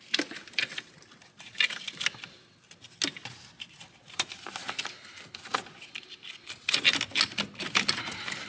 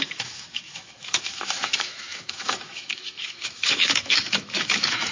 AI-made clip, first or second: second